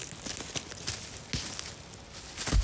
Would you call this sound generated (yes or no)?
no